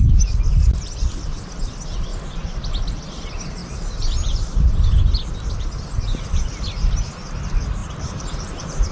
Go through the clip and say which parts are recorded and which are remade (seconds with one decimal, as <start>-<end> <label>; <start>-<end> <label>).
0.0-3.6 recorded; 3.6-4.7 remade; 4.7-7.8 recorded; 7.8-8.9 remade